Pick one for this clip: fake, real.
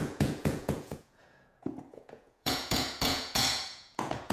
fake